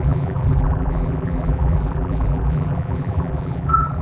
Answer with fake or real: fake